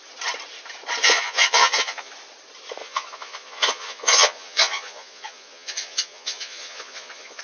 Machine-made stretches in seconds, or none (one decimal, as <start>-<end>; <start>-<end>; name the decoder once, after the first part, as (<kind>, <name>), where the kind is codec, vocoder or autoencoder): 1.0-2.1 (vocoder, Vocos); 2.8-7.4